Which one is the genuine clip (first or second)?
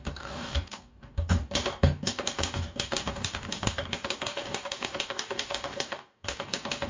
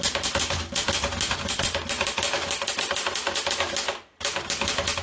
second